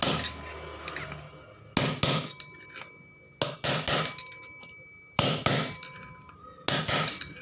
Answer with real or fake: real